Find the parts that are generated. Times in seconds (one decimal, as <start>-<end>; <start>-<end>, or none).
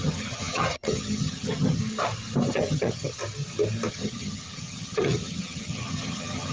0.0-1.8; 2.5-3.2; 3.9-6.5